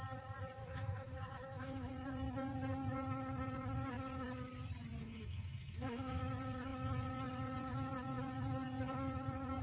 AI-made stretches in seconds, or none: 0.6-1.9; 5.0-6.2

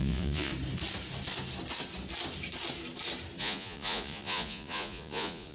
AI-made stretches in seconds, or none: 0.0-0.5; 3.4-5.5

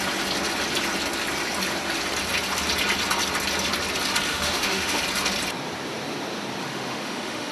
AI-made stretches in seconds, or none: 4.3-5.0; 6.6-7.5

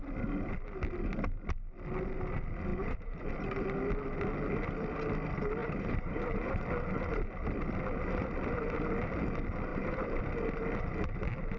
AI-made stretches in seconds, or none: 2.7-3.3; 5.6-6.6; 9.7-10.2

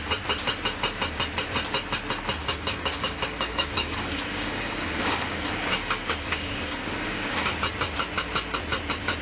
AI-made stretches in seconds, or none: 2.4-7.5

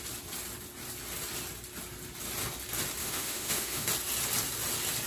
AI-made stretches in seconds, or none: 3.0-3.9

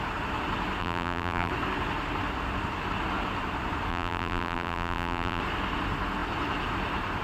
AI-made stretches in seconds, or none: 0.8-1.5; 3.9-5.4